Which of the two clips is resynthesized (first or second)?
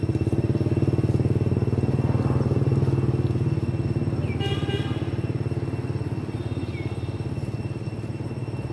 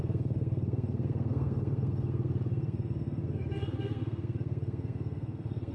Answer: second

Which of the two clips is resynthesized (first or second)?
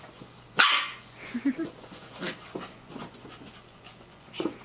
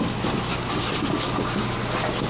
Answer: first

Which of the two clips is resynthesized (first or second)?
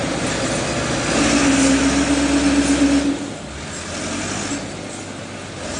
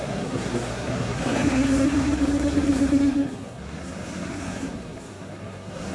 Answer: second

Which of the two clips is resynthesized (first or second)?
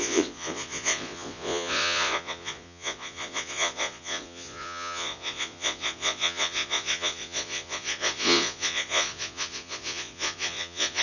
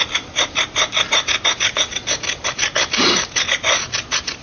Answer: first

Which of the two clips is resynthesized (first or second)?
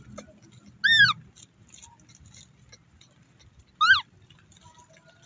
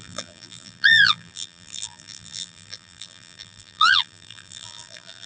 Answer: second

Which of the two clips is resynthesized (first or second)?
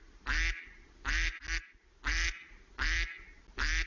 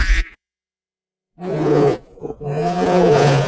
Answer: second